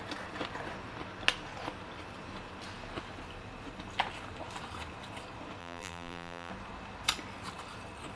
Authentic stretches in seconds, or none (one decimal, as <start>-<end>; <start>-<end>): 0.0-5.6; 6.5-8.2